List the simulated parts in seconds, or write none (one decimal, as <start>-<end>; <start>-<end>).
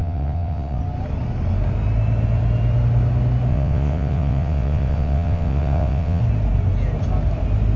0.0-0.8; 3.5-6.2